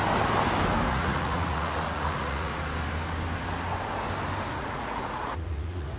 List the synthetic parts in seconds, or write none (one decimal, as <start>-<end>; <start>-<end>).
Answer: 0.9-2.5; 4.5-6.0